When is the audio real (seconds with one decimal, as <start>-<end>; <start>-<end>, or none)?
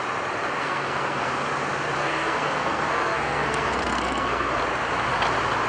0.0-0.6; 1.3-2.0; 4.6-5.7